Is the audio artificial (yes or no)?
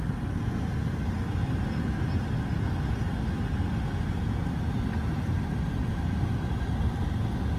no